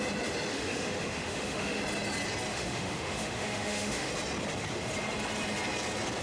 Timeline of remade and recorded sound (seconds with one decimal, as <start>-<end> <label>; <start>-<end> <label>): 0.0-0.5 recorded; 0.5-1.8 remade; 1.8-2.5 recorded; 2.5-4.1 remade; 4.1-6.2 recorded